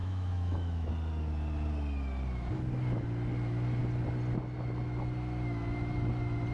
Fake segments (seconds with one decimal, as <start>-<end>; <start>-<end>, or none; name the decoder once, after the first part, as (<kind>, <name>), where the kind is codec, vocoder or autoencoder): 0.0-0.9 (autoencoder, DAC-VAE)